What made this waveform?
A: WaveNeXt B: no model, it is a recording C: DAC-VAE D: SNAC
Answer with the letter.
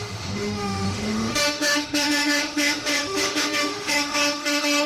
C